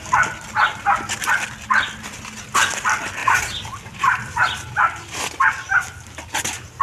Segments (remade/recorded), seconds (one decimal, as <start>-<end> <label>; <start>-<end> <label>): 0.0-6.8 recorded